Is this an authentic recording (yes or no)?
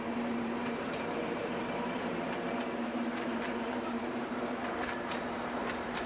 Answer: no